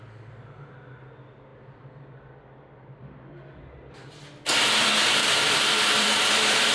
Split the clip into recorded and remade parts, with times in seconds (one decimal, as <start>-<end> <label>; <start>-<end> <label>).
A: 0.0-5.2 recorded; 5.2-6.3 remade; 6.3-6.7 recorded